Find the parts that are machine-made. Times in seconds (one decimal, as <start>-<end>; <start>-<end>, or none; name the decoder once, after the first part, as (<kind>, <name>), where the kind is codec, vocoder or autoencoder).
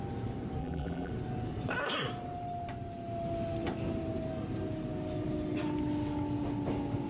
0.6-1.1 (vocoder, BigVGAN v2)